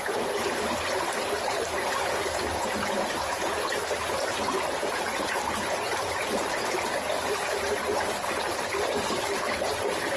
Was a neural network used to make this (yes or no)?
yes